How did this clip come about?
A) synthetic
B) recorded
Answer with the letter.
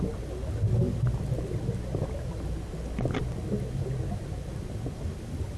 B